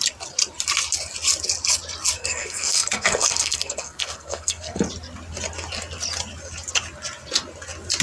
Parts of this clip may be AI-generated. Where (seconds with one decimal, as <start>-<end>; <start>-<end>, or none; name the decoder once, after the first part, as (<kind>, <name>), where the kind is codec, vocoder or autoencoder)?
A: 2.2-4.8 (codec, SNAC)